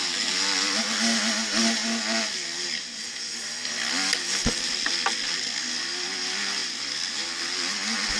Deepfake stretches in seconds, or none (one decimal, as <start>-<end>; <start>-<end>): none